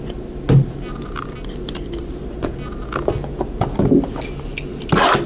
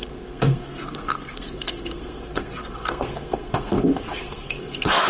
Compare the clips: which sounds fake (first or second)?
second